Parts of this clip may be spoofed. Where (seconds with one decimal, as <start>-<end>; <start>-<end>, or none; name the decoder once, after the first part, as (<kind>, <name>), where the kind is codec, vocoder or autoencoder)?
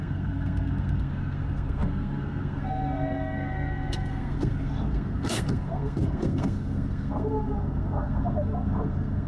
0.0-9.3 (codec, SNAC)